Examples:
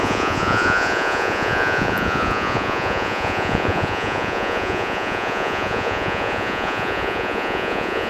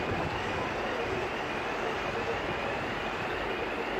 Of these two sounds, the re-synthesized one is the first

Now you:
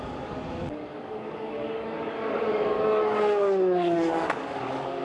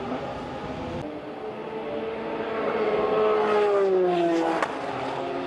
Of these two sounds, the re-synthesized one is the first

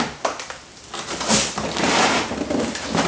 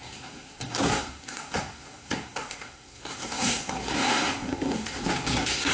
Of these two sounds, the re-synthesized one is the second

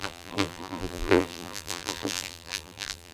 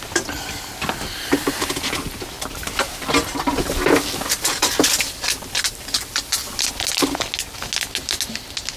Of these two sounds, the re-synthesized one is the first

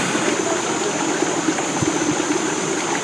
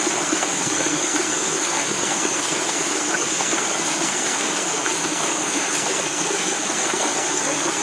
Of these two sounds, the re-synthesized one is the second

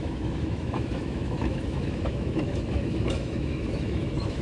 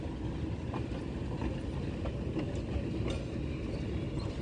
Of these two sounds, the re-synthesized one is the first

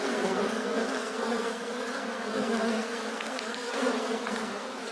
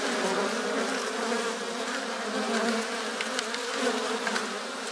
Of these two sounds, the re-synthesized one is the first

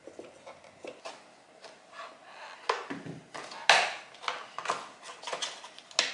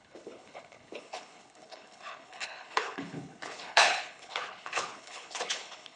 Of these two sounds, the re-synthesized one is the second